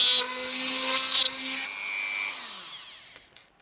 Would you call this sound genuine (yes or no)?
yes